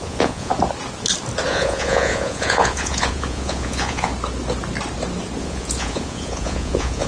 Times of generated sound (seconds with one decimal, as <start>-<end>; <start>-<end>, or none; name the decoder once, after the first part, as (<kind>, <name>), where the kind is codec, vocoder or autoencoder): 0.0-0.5 (vocoder, Vocos); 1.5-4.1; 5.4-7.1